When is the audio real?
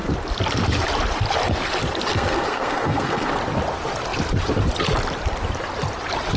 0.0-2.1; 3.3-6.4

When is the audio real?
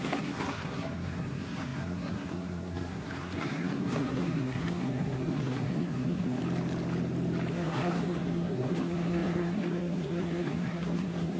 6.4-7.5